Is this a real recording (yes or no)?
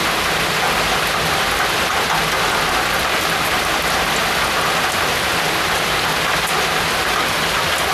yes